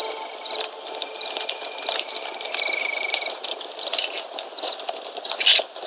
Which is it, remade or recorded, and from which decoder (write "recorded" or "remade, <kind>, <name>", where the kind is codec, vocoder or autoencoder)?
recorded